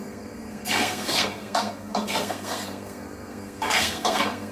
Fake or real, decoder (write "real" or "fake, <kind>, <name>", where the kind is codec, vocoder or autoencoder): fake, codec, SNAC